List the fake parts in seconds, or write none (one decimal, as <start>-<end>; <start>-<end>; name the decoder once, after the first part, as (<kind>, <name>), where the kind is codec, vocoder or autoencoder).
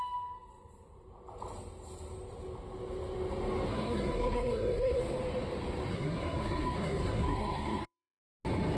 3.7-5.0 (codec, SNAC); 5.9-8.2